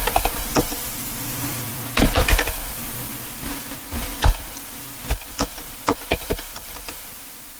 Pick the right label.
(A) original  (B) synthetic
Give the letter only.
B